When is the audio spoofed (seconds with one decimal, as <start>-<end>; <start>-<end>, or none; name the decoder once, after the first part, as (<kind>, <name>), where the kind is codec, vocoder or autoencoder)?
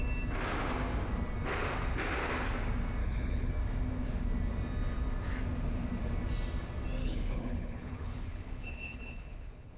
3.0-3.5 (codec, HILCodec); 7.0-9.8